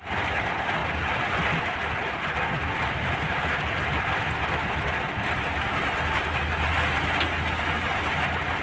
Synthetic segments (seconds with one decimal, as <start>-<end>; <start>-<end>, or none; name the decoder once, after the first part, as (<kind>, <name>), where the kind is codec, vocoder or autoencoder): none